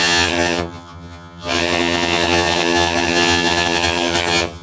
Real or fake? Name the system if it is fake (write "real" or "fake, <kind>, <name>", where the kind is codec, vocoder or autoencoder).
fake, vocoder, HiFi-GAN